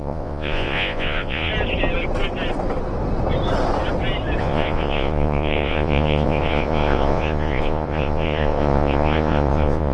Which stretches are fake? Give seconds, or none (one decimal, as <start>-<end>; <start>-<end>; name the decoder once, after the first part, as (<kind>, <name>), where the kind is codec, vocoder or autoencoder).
0.0-1.5 (vocoder, Vocos); 4.4-9.9